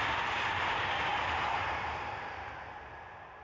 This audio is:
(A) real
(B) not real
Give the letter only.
A